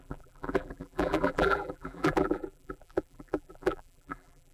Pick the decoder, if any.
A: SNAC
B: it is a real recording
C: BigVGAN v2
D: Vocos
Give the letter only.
C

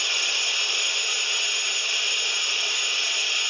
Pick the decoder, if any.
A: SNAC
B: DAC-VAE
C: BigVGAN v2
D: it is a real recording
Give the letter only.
D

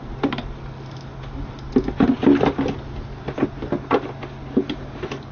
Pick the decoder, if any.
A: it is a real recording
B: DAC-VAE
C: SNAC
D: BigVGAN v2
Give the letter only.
A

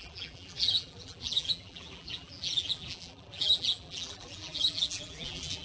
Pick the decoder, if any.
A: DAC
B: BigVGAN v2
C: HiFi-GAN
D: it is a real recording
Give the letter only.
B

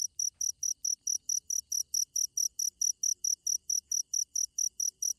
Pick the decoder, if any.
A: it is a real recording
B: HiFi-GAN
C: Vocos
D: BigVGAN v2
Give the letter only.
A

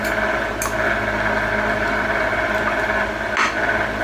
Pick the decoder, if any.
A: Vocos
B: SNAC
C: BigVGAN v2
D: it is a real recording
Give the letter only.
D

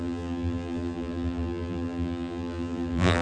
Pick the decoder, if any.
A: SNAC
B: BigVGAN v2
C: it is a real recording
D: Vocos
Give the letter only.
B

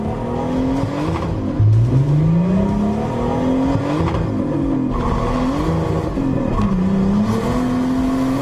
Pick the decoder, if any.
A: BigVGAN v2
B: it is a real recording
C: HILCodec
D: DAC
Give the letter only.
B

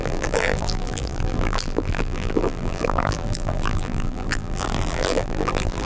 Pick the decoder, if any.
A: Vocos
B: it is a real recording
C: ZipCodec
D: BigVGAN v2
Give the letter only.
D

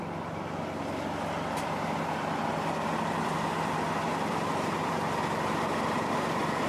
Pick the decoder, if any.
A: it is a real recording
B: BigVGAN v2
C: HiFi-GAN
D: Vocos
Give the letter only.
B